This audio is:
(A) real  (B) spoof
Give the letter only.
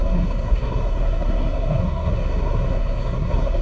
B